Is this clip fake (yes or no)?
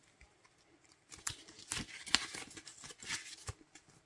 no